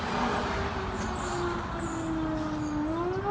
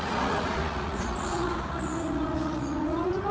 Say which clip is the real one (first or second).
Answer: first